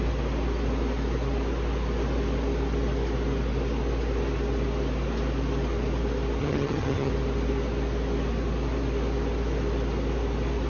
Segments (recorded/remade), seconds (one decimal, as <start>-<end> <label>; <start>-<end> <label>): 0.0-6.4 recorded; 6.4-7.1 remade; 7.1-10.7 recorded